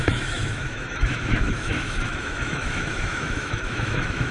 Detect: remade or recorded remade